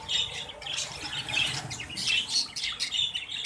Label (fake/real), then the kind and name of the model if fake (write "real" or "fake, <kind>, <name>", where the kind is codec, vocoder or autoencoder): real